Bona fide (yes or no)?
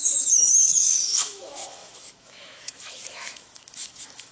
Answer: no